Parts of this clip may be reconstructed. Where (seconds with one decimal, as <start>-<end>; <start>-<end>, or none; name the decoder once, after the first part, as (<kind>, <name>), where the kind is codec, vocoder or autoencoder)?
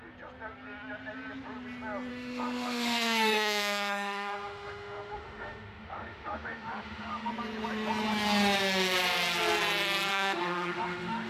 2.1-7.3 (autoencoder, DAC-VAE); 10.1-11.3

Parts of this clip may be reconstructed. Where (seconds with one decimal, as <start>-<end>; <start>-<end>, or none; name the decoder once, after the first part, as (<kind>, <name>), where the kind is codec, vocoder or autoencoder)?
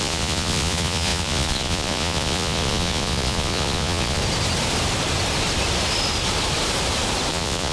0.0-4.2 (vocoder, Vocos); 7.3-7.7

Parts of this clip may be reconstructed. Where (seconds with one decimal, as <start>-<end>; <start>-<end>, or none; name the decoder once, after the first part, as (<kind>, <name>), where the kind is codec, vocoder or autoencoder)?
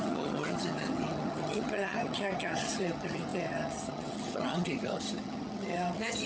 0.0-6.3 (vocoder, HiFi-GAN)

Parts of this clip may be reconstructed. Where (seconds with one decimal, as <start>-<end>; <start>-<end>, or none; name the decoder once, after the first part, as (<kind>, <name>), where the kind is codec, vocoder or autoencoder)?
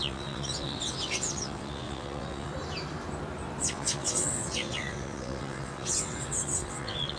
0.0-2.5 (vocoder, WaveNeXt); 3.6-7.2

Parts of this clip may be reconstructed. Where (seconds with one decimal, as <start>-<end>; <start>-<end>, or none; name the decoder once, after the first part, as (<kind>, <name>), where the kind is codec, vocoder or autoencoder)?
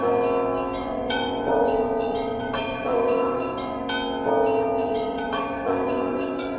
0.8-3.8 (vocoder, Vocos); 4.8-6.6